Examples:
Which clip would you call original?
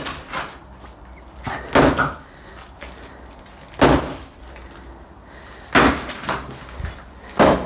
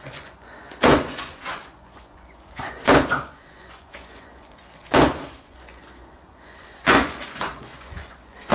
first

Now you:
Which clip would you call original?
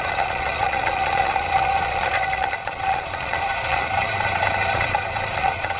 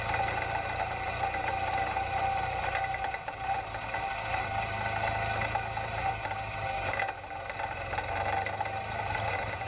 second